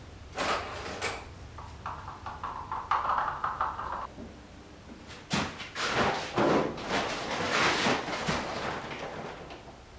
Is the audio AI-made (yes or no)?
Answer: no